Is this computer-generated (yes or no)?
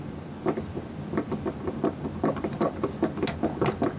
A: no